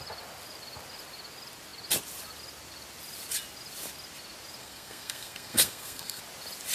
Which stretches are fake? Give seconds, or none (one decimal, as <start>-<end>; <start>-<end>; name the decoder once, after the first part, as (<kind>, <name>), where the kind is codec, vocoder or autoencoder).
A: 4.6-6.2 (codec, SNAC)